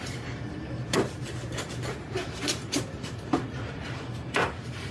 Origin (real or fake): fake